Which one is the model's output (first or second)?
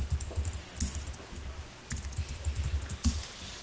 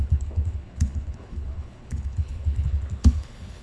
second